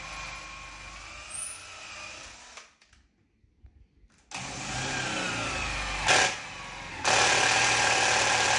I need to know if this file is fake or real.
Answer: real